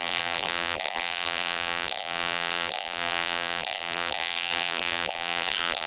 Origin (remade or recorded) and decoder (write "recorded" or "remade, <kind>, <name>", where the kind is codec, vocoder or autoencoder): remade, vocoder, BigVGAN v2